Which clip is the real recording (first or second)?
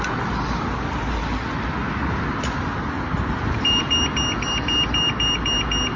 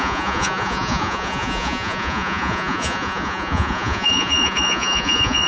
first